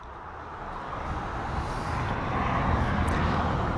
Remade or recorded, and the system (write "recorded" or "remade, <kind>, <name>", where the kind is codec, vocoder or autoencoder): recorded